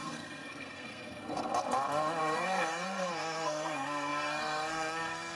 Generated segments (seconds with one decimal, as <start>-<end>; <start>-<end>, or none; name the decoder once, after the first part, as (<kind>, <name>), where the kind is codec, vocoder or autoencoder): 0.0-1.5 (codec, SNAC); 2.2-5.4